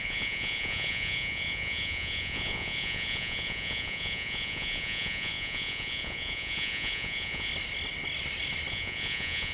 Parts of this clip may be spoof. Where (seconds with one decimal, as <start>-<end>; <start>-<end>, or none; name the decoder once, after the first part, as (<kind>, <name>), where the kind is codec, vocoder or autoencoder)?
0.0-7.5 (vocoder, Vocos); 8.7-9.5